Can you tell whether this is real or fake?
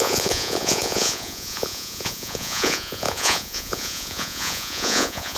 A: fake